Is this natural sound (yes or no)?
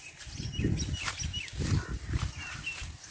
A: yes